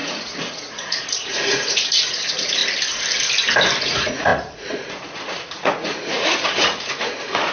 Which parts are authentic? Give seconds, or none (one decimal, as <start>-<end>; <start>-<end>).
2.6-3.8